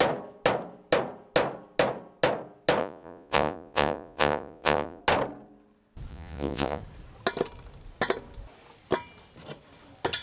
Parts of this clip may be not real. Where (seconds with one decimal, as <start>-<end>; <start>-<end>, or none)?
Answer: 2.8-5.0; 6.1-6.8